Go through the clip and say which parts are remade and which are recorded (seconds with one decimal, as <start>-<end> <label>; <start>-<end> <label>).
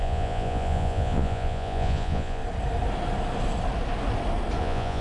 0.0-2.4 remade; 2.4-4.6 recorded; 4.6-5.0 remade